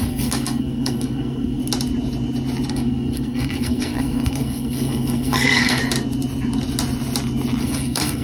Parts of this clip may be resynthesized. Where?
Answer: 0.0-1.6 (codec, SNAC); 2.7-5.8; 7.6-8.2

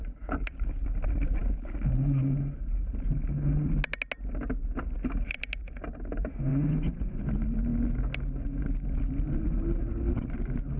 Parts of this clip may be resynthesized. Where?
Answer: 6.5-7.2 (vocoder, Vocos)

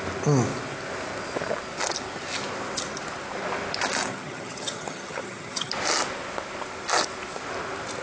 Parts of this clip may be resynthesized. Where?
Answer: 4.1-5.7 (vocoder, HiFi-GAN)

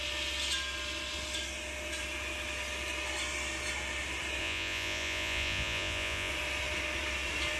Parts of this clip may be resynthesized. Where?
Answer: 4.4-6.3 (vocoder, Vocos)